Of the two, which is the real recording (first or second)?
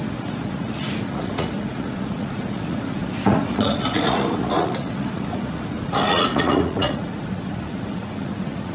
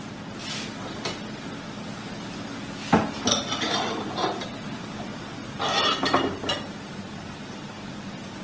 second